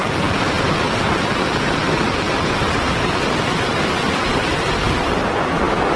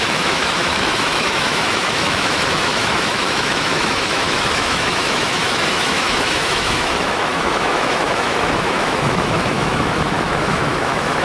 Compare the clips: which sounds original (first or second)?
first